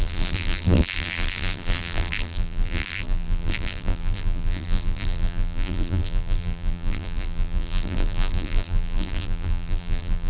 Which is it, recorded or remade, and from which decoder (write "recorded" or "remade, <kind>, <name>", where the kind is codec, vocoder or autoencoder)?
remade, vocoder, BigVGAN v2